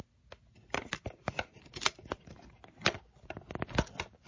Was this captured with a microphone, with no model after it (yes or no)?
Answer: yes